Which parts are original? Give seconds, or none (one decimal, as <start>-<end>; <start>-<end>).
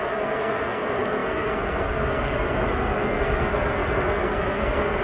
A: none